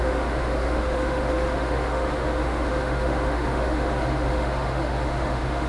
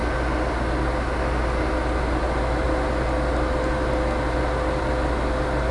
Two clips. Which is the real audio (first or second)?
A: second